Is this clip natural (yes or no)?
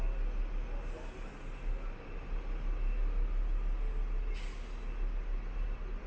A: yes